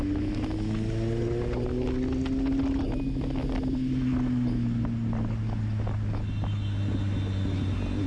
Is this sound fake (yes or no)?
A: no